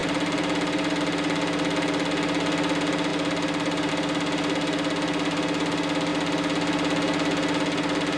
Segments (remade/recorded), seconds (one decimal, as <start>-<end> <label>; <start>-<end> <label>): 0.0-1.0 remade; 1.0-8.2 recorded